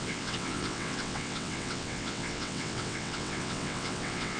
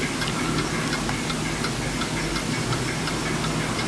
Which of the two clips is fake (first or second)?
first